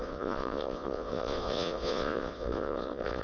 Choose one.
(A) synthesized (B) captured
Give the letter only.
A